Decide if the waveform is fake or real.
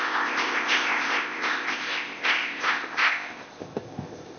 fake